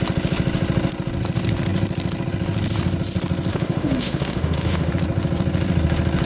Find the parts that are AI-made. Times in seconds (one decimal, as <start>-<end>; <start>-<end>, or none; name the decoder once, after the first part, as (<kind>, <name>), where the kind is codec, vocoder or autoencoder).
3.5-4.9 (autoencoder, DAC-VAE)